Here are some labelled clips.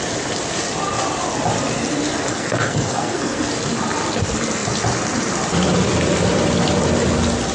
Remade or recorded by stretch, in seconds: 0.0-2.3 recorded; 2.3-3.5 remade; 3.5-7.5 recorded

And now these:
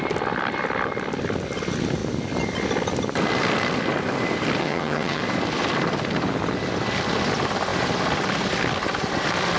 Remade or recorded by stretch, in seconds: 0.0-4.6 recorded; 4.6-5.2 remade; 5.2-9.6 recorded

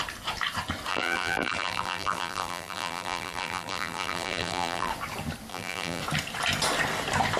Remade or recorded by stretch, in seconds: 0.0-0.9 recorded; 0.9-4.9 remade; 4.9-5.5 recorded; 5.5-6.0 remade; 6.0-7.4 recorded

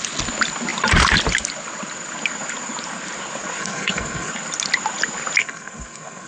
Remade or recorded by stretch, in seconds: 0.0-3.6 recorded; 3.6-4.3 remade; 4.3-5.4 recorded; 5.4-6.3 remade

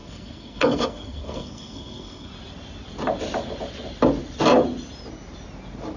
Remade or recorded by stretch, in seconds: 0.0-2.3 remade; 2.3-6.0 recorded

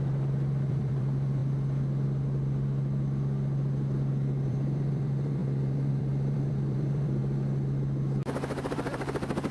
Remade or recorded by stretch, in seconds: 0.0-1.4 remade; 1.4-4.5 recorded; 4.5-7.2 remade; 7.2-8.7 recorded; 8.7-9.5 remade

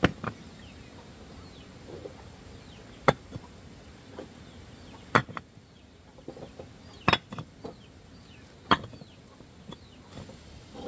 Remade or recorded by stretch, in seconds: 0.0-5.2 recorded; 5.2-6.3 remade; 6.3-10.9 recorded

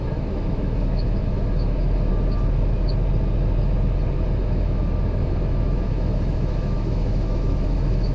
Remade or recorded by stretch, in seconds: 0.0-2.1 remade; 2.1-4.4 recorded; 4.4-8.1 remade